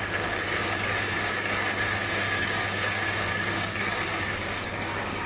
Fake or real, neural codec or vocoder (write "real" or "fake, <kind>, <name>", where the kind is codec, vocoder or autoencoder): fake, codec, DAC